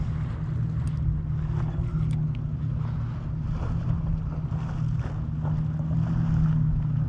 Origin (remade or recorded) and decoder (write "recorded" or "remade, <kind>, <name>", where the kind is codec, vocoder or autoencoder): recorded